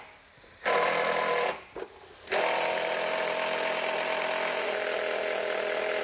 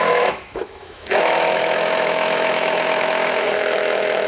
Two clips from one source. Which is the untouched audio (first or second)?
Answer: first